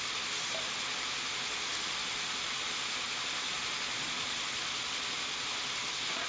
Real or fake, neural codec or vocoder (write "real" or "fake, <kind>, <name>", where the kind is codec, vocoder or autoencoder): real